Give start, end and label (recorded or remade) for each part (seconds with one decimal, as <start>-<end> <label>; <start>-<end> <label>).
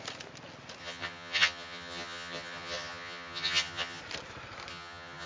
0.0-0.8 recorded; 0.8-4.0 remade; 4.0-4.7 recorded; 4.7-5.3 remade